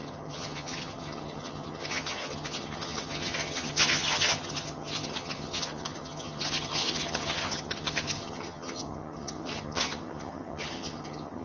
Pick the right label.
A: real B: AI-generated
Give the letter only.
B